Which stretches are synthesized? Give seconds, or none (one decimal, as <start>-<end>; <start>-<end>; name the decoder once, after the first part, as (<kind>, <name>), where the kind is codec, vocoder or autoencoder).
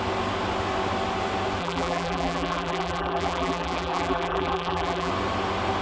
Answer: 1.6-5.1 (vocoder, BigVGAN v2)